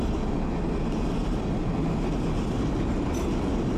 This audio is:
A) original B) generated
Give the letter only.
A